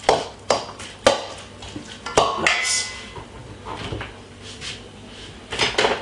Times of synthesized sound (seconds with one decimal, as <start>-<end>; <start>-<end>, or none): none